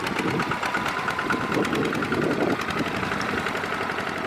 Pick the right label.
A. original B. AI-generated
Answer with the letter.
A